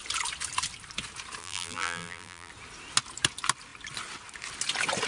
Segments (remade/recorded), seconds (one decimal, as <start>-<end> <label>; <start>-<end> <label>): 0.0-1.4 recorded; 1.4-2.5 remade; 2.5-5.1 recorded